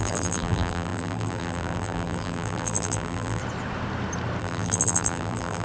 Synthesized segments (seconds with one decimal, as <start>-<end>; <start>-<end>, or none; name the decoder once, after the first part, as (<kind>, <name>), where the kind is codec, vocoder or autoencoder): 0.0-3.4 (vocoder, BigVGAN v2); 4.4-5.6